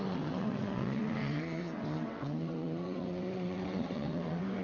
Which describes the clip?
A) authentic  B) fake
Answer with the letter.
B